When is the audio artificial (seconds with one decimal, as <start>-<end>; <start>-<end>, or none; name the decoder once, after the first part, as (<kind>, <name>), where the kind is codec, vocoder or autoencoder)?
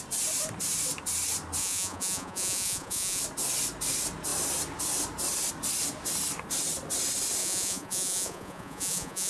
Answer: 1.6-3.2 (vocoder, Vocos); 7.4-9.3